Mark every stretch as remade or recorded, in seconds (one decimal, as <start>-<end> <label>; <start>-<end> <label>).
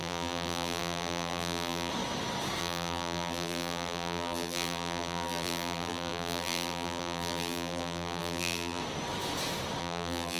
0.0-1.9 remade; 1.9-2.6 recorded; 2.6-8.8 remade; 8.8-9.8 recorded; 9.8-10.4 remade